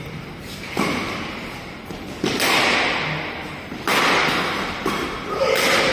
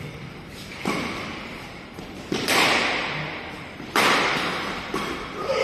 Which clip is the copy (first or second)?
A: second